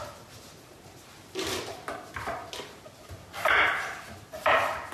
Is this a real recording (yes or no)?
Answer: yes